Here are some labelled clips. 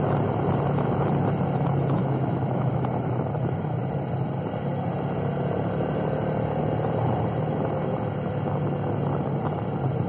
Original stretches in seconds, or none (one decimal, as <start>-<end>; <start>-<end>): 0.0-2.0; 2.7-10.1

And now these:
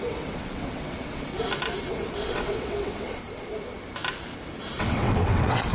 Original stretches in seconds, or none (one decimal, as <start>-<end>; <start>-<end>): 1.3-1.9; 3.2-4.8

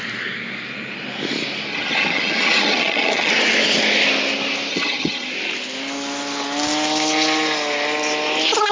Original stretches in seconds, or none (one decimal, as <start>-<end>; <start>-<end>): 0.0-1.7; 3.3-4.7; 5.3-8.7